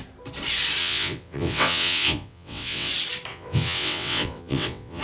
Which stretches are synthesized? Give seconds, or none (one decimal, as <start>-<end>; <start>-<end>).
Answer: 0.8-2.9; 3.3-5.0